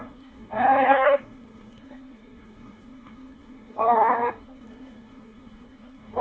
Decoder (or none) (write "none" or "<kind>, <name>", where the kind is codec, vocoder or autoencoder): codec, SNAC